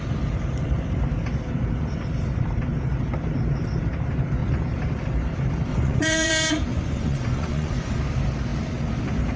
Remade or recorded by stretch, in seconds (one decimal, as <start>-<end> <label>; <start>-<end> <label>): 0.0-5.7 recorded; 5.7-6.3 remade; 6.3-6.7 recorded; 6.7-8.0 remade; 8.0-9.4 recorded